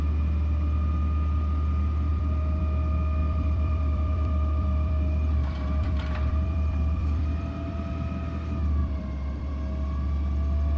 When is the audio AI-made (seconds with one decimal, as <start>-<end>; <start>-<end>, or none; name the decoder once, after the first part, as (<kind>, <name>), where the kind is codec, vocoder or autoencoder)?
2.1-2.6 (vocoder, BigVGAN v2); 3.2-7.9; 8.8-9.5